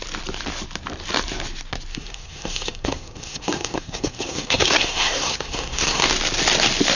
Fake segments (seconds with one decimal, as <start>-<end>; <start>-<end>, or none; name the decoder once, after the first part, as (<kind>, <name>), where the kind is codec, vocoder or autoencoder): 1.9-6.0 (codec, SNAC)